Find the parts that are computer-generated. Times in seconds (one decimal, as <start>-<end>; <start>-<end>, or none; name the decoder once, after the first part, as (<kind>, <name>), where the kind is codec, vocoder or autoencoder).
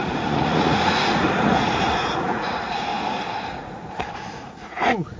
0.0-2.9 (vocoder, Vocos); 3.4-5.2